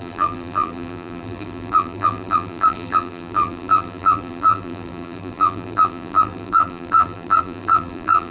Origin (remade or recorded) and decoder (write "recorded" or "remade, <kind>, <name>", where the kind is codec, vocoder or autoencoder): remade, vocoder, BigVGAN v2